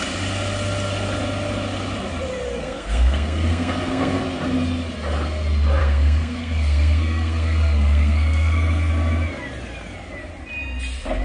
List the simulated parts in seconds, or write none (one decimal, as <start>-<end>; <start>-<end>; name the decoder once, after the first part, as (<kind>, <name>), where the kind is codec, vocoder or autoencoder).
2.6-4.2 (codec, SNAC); 5.8-8.9